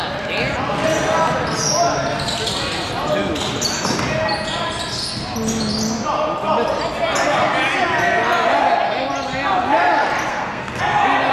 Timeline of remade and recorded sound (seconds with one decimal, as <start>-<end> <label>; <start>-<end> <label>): 0.0-10.3 recorded; 10.3-10.8 remade; 10.8-11.3 recorded